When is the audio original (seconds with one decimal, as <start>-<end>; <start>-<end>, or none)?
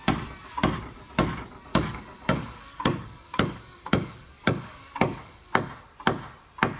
0.0-1.7; 5.7-6.8